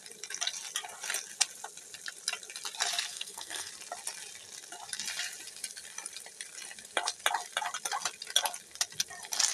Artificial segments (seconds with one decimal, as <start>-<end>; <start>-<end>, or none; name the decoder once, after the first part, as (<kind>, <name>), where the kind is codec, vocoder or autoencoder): 3.1-3.7 (codec, SNAC)